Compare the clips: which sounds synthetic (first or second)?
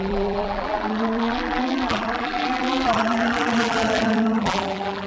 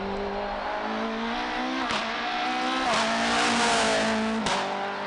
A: first